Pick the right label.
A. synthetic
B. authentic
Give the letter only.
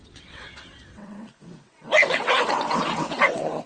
A